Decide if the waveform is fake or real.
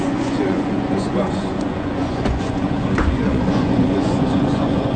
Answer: fake